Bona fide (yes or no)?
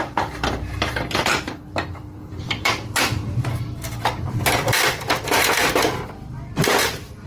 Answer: no